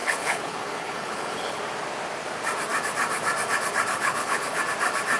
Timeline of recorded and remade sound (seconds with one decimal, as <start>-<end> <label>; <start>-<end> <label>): 0.0-1.6 remade; 1.6-3.9 recorded; 3.9-4.6 remade; 4.6-5.2 recorded